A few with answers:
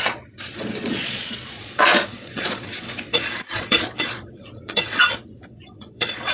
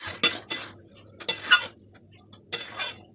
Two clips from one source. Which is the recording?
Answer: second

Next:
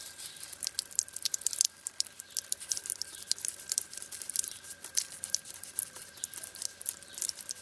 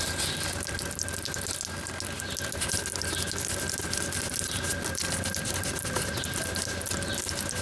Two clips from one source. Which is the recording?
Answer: second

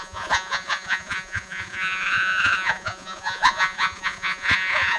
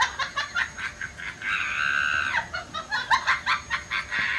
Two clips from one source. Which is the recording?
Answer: second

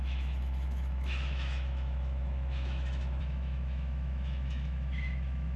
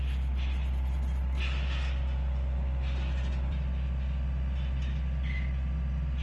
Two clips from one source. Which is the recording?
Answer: second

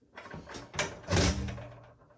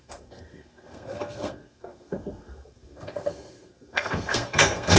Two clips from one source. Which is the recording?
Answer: first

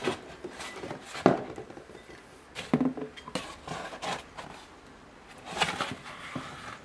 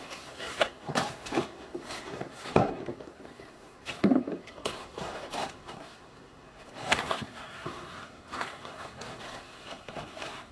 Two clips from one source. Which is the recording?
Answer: first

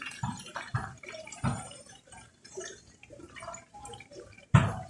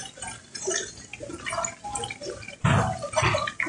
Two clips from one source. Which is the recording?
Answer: second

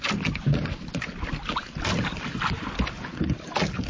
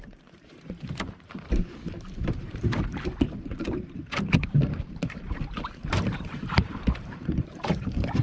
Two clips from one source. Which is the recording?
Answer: first